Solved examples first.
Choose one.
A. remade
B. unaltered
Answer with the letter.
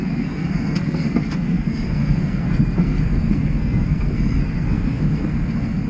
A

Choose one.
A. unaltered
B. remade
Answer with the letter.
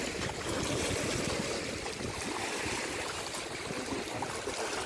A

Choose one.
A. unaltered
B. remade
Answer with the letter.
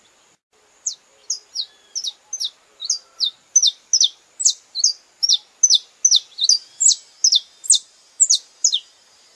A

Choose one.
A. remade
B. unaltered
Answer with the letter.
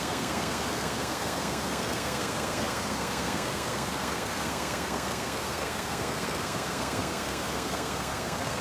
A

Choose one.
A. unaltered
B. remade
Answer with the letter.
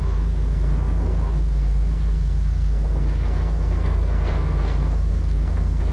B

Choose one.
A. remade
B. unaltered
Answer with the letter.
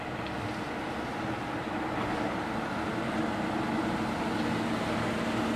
B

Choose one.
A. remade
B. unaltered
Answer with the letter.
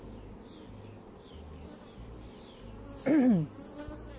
B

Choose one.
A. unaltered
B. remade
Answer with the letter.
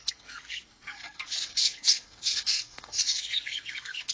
B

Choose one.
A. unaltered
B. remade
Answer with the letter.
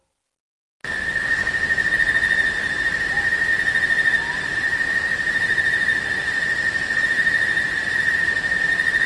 A